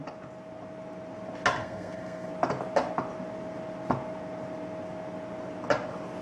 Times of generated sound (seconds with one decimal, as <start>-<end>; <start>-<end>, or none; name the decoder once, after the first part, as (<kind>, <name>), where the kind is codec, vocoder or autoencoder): 1.6-2.3 (codec, SNAC)